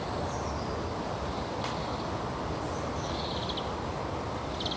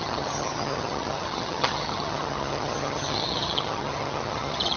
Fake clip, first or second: second